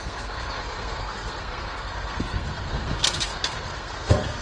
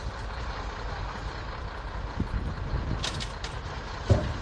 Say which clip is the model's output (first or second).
first